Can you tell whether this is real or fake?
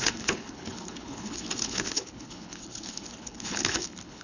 fake